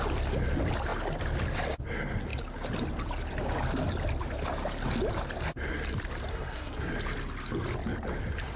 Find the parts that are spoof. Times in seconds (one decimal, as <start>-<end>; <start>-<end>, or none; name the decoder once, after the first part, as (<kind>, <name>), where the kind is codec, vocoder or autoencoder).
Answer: 6.3-6.9 (codec, SNAC)